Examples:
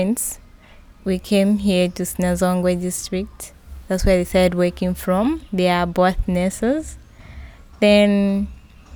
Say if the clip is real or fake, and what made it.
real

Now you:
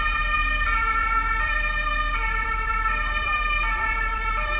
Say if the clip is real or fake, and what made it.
fake, vocoder, BigVGAN v2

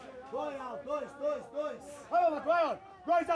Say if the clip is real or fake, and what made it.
real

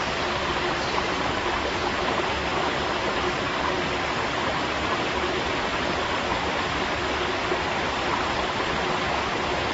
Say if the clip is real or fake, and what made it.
real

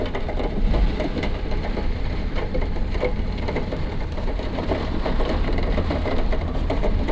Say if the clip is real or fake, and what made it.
fake, vocoder, BigVGAN v2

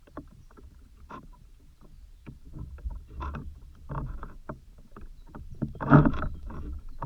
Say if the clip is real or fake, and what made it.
fake, vocoder, BigVGAN v2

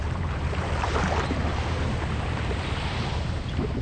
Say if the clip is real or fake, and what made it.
fake, vocoder, BigVGAN v2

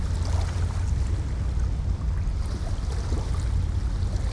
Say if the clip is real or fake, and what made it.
real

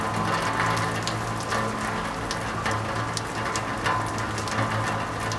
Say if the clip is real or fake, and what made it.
real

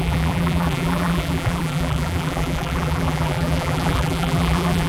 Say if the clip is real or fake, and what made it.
fake, vocoder, BigVGAN v2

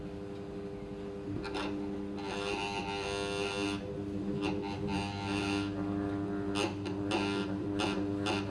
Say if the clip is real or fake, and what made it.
real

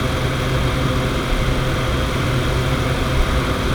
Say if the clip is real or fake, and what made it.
real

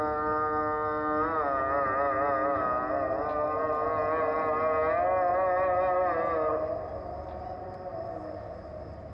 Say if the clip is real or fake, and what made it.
real